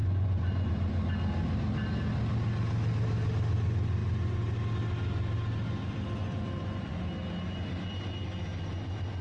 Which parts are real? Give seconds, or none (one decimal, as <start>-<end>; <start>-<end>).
0.7-6.2; 7.0-9.2